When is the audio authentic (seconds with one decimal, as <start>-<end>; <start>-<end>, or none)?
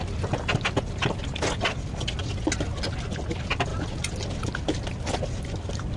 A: 0.0-6.0